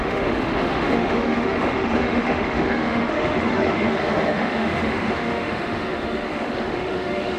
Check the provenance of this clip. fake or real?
fake